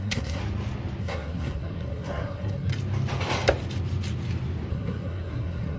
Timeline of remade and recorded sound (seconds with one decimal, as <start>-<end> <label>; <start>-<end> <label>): 0.0-0.4 remade; 0.4-1.0 recorded; 1.0-2.7 remade; 2.7-4.7 recorded; 4.7-5.8 remade